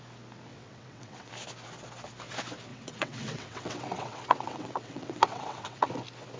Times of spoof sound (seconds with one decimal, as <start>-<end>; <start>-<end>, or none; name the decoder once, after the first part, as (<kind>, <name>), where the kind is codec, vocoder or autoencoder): 0.5-1.3 (vocoder, WaveNeXt); 2.7-5.9